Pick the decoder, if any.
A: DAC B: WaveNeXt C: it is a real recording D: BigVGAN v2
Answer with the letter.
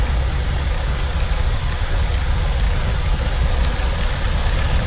C